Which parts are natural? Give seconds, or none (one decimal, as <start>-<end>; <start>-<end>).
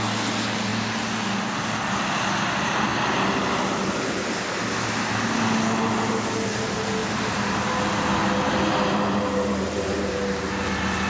0.0-11.1